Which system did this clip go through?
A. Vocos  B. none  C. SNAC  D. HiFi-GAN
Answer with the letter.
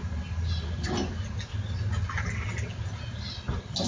B